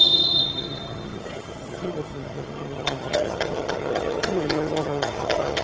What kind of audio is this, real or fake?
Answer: fake